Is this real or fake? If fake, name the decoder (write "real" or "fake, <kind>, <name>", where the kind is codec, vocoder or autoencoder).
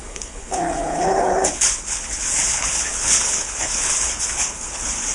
fake, codec, HILCodec